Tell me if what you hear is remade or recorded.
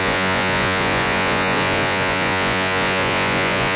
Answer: remade